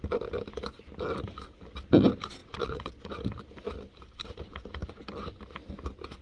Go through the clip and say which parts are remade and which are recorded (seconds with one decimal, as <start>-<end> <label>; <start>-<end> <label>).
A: 0.0-2.4 recorded; 2.4-2.9 remade; 2.9-6.2 recorded